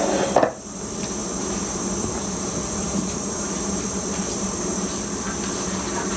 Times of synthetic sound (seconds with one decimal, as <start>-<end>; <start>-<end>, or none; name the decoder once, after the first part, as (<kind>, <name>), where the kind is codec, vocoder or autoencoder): 1.2-4.9 (vocoder, BigVGAN v2)